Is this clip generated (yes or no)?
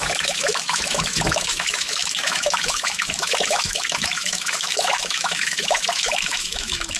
yes